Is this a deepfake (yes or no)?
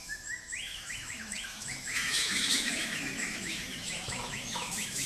yes